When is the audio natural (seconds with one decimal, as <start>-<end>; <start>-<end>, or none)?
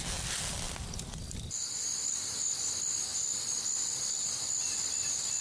0.0-5.4